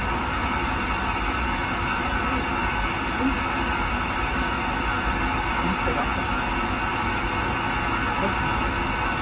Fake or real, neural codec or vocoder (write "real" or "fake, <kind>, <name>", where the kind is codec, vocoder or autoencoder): real